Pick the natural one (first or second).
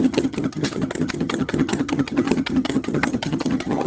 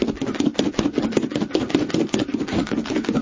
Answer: second